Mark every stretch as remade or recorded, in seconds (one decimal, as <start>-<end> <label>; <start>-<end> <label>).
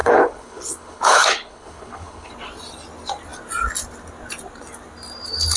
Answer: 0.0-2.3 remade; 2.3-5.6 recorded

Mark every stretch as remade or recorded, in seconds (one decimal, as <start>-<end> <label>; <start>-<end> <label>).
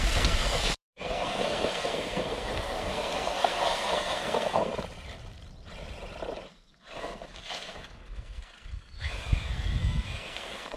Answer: 0.0-4.7 remade; 4.7-6.5 recorded; 6.5-10.8 remade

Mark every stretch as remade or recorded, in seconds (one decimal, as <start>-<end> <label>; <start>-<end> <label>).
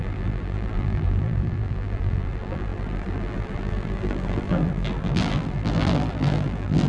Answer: 0.0-6.9 remade